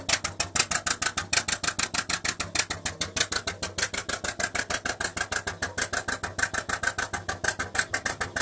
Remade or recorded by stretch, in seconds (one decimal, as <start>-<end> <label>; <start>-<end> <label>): 0.0-8.4 recorded